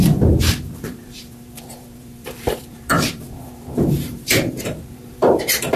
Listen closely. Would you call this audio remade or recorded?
remade